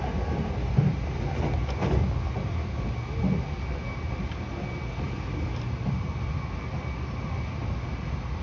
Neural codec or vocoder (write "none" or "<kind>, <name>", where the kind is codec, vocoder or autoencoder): none